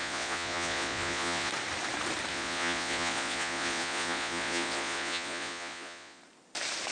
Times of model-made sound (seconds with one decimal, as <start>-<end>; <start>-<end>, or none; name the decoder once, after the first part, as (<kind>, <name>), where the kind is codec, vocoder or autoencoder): 0.0-1.5 (vocoder, Vocos); 2.3-6.2